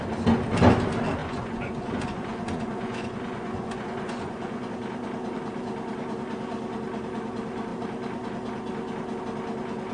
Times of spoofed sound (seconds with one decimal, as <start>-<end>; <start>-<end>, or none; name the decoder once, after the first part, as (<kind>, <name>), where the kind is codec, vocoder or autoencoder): 1.2-4.7 (vocoder, Vocos)